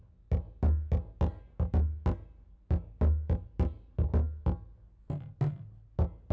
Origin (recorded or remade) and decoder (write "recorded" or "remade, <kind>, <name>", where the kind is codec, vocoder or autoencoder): recorded